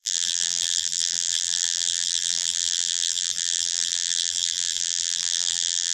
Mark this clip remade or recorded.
remade